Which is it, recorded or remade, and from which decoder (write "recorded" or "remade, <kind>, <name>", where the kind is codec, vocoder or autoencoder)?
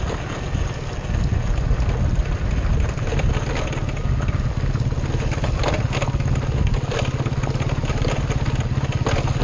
recorded